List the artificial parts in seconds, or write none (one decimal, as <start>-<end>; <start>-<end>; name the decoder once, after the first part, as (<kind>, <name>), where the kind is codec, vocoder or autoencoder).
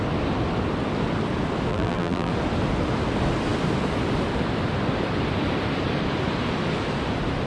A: 1.7-2.3 (vocoder, BigVGAN v2)